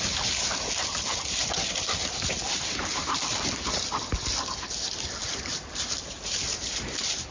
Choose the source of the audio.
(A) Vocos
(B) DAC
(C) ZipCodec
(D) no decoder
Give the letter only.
D